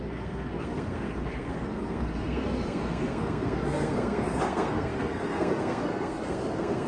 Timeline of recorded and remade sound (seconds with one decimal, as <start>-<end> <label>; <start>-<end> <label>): 0.0-6.9 remade